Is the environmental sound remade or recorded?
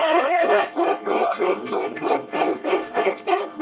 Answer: remade